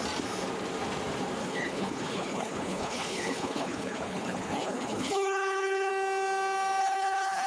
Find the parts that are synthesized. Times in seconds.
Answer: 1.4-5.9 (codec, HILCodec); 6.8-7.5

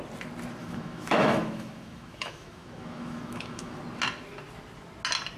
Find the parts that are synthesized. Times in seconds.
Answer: 0.6-3.8 (autoencoder, DAC-VAE)